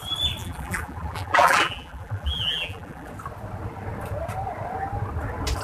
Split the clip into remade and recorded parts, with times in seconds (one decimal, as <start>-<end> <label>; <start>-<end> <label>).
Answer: 0.0-0.4 recorded; 0.4-3.1 remade; 3.1-5.6 recorded